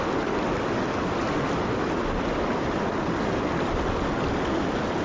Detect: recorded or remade recorded